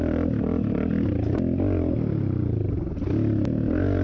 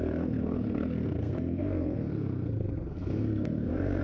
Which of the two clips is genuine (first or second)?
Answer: first